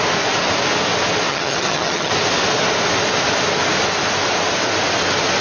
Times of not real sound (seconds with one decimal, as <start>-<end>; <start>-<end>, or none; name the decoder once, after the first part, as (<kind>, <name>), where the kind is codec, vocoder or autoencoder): 1.3-2.1 (vocoder, HiFi-GAN)